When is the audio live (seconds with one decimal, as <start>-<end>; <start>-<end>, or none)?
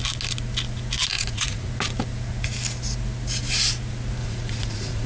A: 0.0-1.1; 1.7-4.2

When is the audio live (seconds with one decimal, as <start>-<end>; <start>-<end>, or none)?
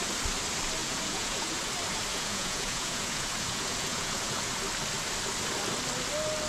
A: 0.0-0.8; 1.7-2.1; 4.5-6.5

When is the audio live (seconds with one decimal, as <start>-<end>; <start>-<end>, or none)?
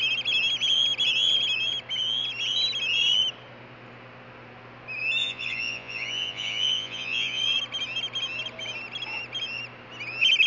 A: 0.0-5.2; 7.4-10.5